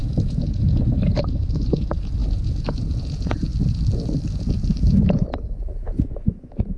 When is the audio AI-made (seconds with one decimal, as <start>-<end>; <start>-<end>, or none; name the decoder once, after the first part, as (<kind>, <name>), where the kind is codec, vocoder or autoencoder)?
0.0-3.5 (vocoder, Vocos); 4.9-6.8